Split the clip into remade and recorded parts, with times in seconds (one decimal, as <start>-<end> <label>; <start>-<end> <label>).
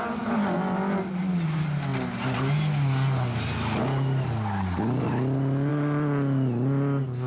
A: 0.0-7.3 recorded